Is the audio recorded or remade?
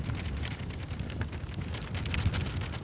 recorded